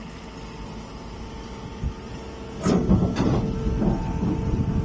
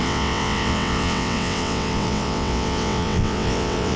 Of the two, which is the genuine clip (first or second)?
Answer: first